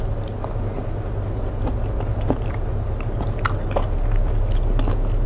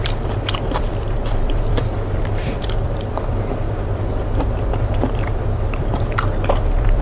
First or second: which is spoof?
second